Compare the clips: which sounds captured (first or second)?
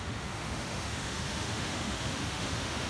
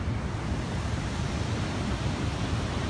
second